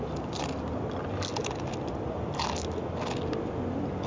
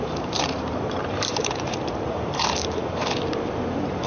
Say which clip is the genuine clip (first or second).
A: first